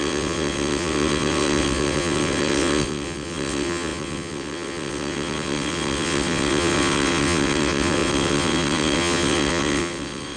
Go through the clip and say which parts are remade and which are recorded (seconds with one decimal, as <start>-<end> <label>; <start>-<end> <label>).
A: 0.0-10.4 remade